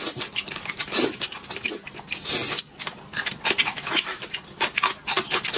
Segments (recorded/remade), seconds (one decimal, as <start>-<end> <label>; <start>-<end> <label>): 0.0-3.7 recorded; 3.7-4.2 remade; 4.2-5.6 recorded